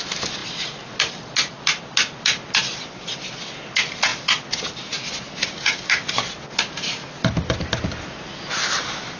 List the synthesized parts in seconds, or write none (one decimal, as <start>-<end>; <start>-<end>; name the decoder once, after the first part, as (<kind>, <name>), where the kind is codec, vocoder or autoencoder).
none